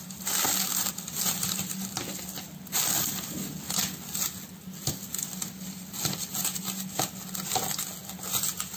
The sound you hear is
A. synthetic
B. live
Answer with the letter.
B